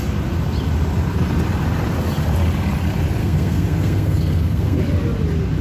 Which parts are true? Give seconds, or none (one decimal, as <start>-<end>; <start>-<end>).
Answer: 0.0-3.2; 4.8-5.6